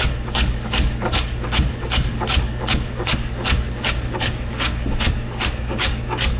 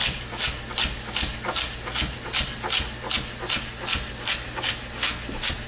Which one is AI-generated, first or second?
first